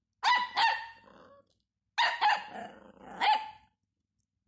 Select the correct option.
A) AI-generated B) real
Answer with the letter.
B